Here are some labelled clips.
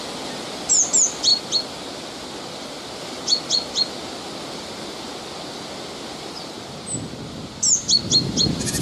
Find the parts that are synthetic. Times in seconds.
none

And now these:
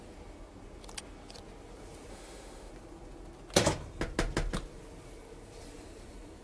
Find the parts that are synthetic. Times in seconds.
2.1-2.7 (autoencoder, DAC-VAE)

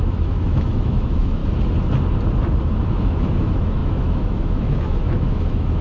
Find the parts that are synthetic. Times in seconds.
0.0-1.4 (autoencoder, DAC-VAE); 2.9-5.8

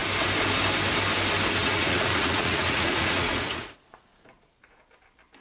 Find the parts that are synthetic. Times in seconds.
1.6-4.8 (vocoder, Vocos)

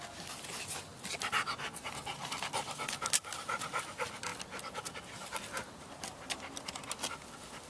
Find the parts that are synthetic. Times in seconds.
none

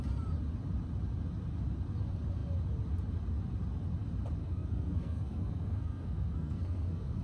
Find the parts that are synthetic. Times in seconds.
4.4-7.2 (codec, SNAC)

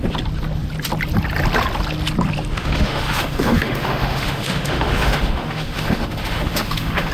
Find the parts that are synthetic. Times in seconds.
2.5-7.1 (autoencoder, DAC-VAE)

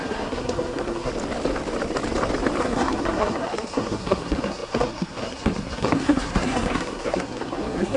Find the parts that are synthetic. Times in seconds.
0.0-1.1 (codec, SNAC); 2.6-8.0